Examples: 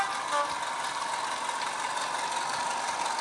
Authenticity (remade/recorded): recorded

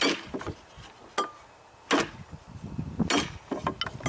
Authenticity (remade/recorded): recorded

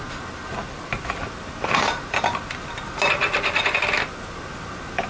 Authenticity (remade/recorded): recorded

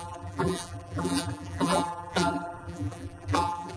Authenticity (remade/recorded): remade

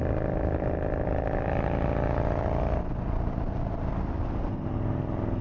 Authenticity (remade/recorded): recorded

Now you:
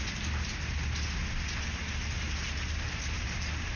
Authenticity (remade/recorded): recorded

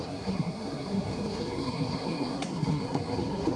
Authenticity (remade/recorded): remade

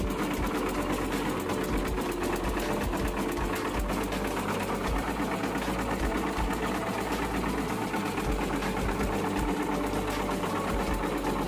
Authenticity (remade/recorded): recorded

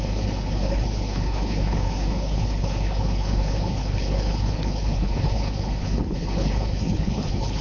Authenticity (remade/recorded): remade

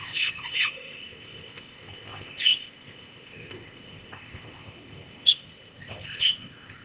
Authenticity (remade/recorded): remade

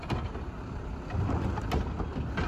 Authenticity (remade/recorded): recorded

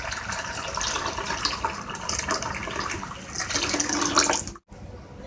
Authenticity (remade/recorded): recorded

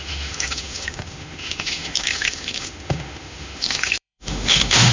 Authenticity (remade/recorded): remade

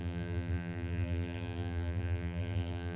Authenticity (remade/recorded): remade